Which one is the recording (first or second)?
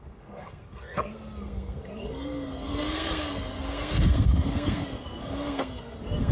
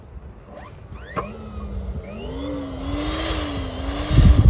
second